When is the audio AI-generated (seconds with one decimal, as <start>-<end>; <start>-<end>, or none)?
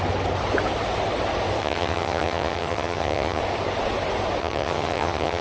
1.6-3.4; 4.4-5.4